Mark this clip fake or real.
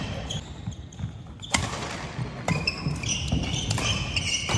real